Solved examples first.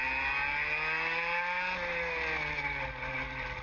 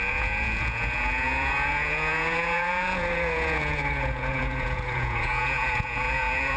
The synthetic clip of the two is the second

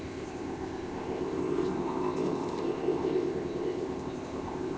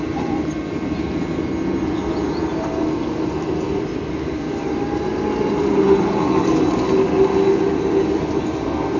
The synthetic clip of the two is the first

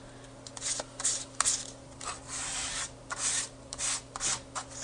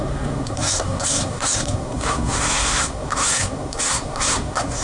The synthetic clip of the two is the second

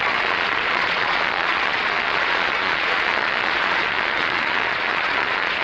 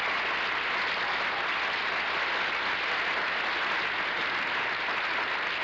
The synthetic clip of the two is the first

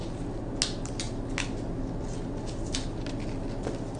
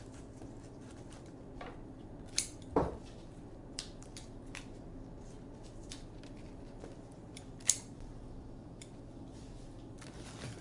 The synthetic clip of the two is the second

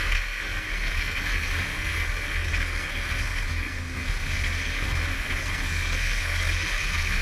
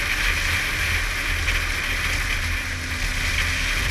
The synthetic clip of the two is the first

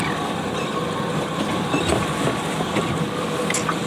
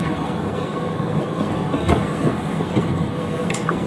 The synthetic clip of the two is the second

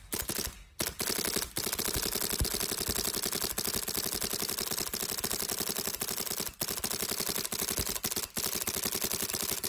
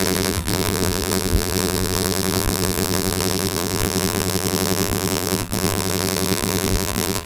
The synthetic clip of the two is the second